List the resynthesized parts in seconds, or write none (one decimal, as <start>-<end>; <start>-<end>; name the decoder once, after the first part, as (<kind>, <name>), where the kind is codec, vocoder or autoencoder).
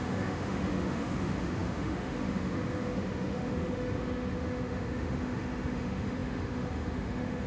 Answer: 0.0-7.5 (autoencoder, DAC-VAE)